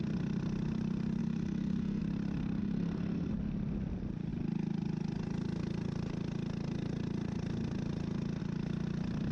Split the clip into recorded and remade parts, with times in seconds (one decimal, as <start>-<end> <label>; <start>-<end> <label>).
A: 0.0-1.2 recorded; 1.2-2.0 remade; 2.0-2.6 recorded; 2.6-3.3 remade; 3.3-9.3 recorded